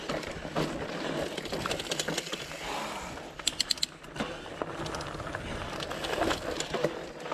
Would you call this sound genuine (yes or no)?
yes